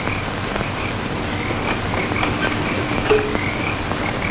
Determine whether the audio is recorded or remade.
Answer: recorded